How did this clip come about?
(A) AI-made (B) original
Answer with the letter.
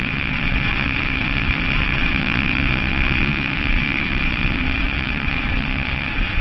A